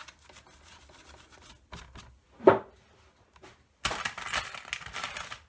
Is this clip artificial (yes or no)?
no